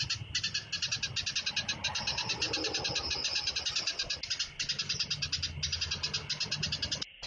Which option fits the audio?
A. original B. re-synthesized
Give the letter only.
A